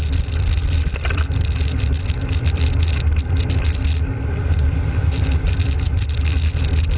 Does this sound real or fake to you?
fake